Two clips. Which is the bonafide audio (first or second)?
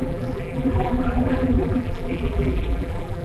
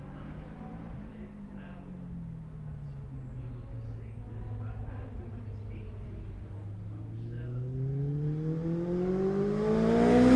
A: second